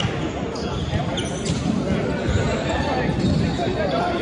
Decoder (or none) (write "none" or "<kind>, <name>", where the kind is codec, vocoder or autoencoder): none